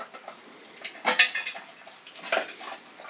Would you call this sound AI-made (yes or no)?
no